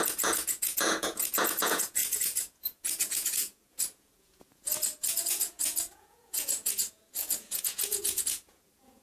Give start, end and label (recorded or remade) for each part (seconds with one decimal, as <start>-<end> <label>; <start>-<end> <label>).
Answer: 0.0-9.0 remade